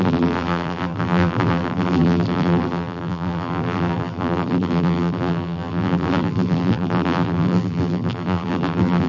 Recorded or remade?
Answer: remade